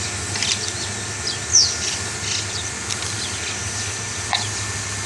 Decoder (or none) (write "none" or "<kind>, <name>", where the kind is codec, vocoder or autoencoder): none